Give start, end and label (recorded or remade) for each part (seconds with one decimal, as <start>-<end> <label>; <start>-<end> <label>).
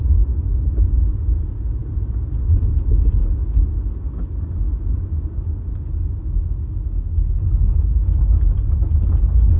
0.0-6.2 recorded; 6.2-8.4 remade; 8.4-9.6 recorded